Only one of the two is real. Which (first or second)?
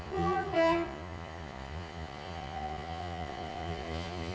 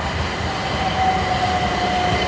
second